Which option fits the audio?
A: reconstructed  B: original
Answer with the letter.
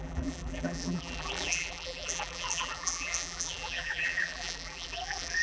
A